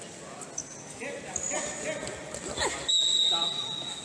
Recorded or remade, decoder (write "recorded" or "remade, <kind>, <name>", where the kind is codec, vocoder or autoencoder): recorded